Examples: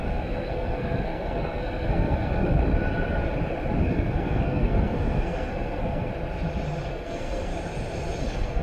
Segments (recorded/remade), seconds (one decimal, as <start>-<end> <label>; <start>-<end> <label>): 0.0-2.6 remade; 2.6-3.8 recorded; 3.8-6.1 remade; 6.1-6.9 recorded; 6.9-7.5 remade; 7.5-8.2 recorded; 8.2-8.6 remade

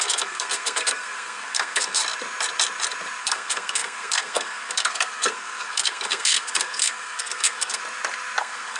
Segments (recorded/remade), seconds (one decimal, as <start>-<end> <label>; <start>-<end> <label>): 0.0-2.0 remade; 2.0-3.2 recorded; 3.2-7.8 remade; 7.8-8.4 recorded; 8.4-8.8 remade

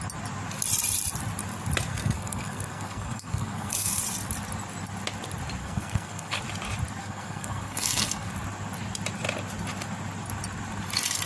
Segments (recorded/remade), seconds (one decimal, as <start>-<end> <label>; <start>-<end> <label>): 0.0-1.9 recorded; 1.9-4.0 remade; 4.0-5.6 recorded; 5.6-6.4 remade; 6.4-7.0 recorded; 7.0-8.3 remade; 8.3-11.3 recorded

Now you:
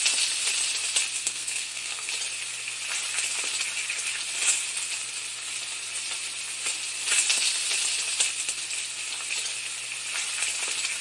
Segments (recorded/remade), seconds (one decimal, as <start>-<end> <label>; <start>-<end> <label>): 0.0-1.2 recorded; 1.2-2.1 remade; 2.1-11.0 recorded

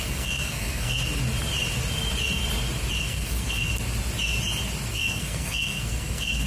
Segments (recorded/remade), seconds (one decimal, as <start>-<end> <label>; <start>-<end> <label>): 0.0-1.0 remade; 1.0-3.0 recorded; 3.0-3.7 remade; 3.7-4.9 recorded; 4.9-6.5 remade

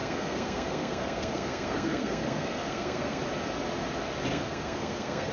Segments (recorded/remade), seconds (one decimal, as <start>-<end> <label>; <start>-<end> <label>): 0.0-3.2 remade; 3.2-4.3 recorded; 4.3-5.3 remade

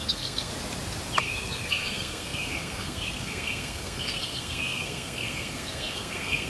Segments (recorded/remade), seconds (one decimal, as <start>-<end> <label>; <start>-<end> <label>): 0.0-0.5 remade; 0.5-1.2 recorded; 1.2-6.5 remade

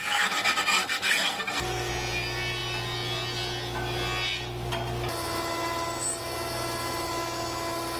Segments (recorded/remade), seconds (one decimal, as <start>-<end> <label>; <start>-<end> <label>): 0.0-1.9 remade; 1.9-8.0 recorded